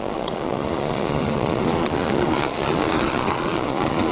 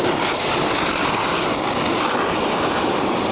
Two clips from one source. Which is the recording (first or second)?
second